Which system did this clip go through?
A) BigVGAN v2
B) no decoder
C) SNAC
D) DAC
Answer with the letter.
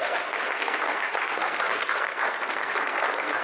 C